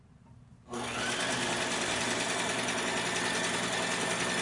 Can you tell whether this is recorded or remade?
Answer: recorded